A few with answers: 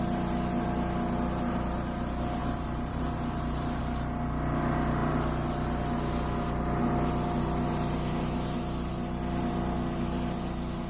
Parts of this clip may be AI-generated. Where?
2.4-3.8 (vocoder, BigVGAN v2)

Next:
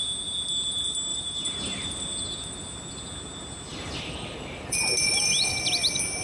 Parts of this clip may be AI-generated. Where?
1.1-1.9 (vocoder, BigVGAN v2); 3.7-5.6

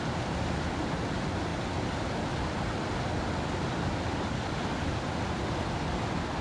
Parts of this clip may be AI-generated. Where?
none

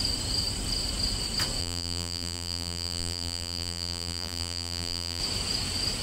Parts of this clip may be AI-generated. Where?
1.6-5.2 (vocoder, BigVGAN v2)

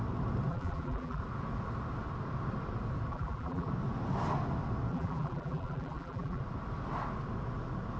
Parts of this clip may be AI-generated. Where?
0.5-1.2 (vocoder, BigVGAN v2); 3.1-3.7; 4.9-6.4

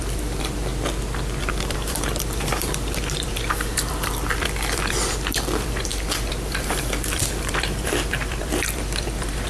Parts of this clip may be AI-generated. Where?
0.0-0.7 (vocoder, BigVGAN v2); 1.4-9.5

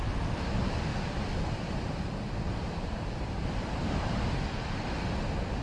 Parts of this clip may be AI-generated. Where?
0.9-4.3 (vocoder, BigVGAN v2)